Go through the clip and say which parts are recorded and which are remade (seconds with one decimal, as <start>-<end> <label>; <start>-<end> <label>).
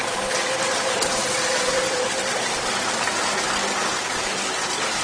0.0-5.0 recorded